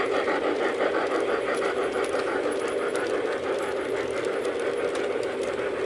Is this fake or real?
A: real